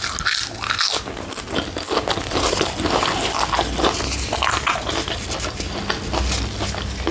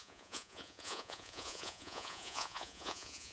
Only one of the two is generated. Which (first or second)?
second